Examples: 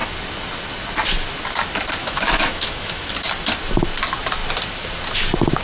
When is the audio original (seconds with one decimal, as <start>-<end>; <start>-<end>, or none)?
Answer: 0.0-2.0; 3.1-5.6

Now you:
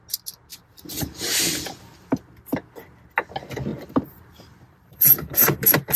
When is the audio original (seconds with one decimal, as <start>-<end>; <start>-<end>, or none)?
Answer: 0.0-0.5; 1.4-3.7

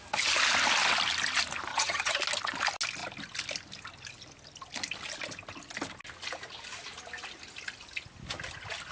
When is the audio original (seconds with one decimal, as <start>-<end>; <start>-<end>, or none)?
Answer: 0.0-1.7; 2.2-8.9

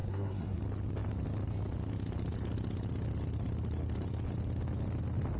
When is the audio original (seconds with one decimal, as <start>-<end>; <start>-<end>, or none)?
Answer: 0.6-5.4

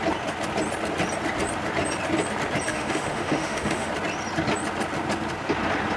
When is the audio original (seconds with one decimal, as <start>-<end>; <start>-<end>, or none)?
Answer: 0.0-2.7; 3.9-6.0

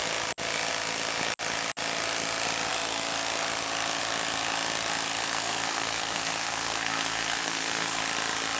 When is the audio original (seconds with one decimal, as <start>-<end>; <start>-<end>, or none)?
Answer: 0.0-5.2; 8.0-8.6

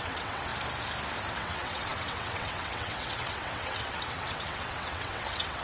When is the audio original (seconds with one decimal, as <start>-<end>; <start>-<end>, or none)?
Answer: 0.5-1.3

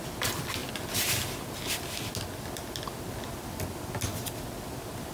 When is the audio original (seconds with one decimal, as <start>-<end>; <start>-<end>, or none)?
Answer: 0.0-5.1